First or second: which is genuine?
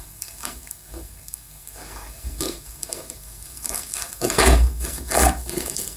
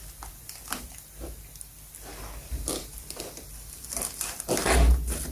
second